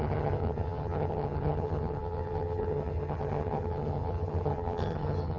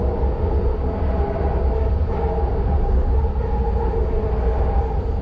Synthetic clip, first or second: first